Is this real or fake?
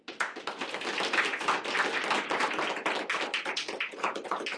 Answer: real